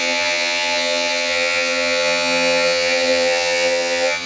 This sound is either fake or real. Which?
fake